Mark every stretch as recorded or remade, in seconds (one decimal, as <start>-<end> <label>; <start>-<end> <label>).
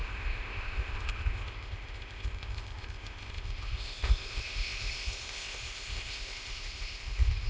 0.0-7.5 remade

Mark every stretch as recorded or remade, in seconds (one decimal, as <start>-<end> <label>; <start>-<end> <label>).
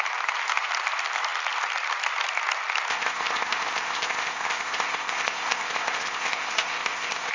0.0-2.9 recorded; 2.9-7.3 remade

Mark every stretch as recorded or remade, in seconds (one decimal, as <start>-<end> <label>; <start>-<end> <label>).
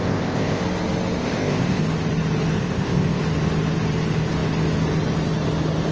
0.0-0.6 remade; 0.6-1.2 recorded; 1.2-1.8 remade; 1.8-2.6 recorded; 2.6-3.2 remade; 3.2-5.9 recorded